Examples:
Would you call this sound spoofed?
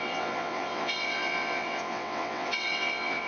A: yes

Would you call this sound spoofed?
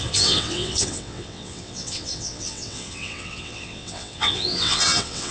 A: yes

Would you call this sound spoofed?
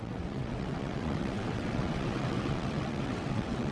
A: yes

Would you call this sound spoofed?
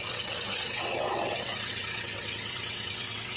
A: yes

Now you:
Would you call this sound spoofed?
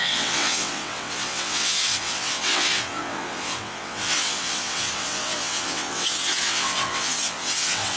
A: yes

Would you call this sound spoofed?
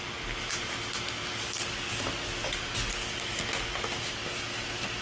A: no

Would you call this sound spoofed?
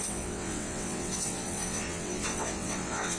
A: yes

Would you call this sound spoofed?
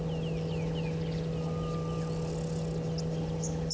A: no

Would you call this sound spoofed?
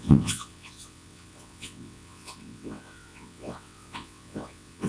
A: yes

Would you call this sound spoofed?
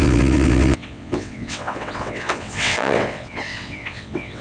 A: yes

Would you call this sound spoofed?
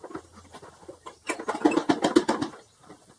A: no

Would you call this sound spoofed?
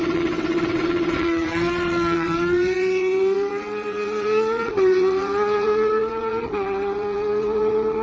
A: yes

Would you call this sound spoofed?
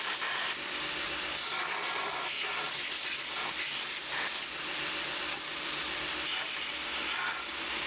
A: no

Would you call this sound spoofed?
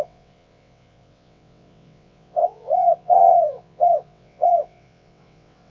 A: yes